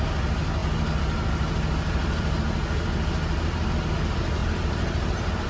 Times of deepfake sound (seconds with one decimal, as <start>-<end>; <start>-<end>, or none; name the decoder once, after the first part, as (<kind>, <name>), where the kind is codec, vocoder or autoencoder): 4.4-5.5 (vocoder, BigVGAN v2)